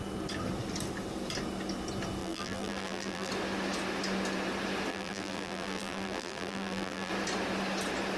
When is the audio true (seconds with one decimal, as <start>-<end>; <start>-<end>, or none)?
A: 0.0-2.2; 3.3-4.9; 7.1-8.2

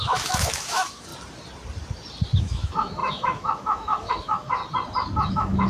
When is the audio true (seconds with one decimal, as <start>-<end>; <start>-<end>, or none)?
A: 1.1-2.4; 4.6-5.3

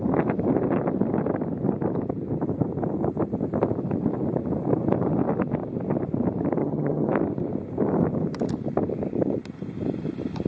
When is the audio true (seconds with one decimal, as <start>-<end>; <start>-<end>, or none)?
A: 0.0-6.6; 7.1-10.5

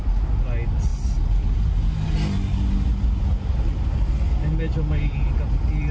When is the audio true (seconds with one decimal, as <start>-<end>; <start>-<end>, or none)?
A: 0.0-5.9

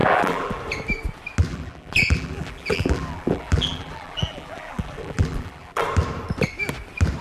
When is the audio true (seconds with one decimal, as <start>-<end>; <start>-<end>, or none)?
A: 0.6-1.5; 5.8-7.2